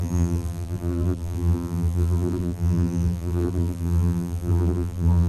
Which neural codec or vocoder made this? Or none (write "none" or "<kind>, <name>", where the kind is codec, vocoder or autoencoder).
vocoder, BigVGAN v2